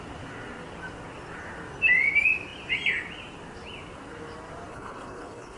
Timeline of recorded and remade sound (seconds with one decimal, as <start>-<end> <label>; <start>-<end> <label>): 0.0-4.7 recorded; 4.7-5.6 remade